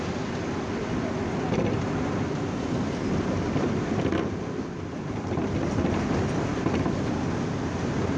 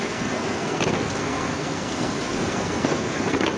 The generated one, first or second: second